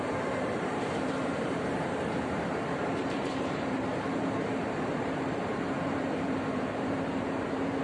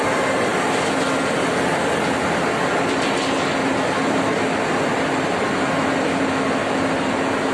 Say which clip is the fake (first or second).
first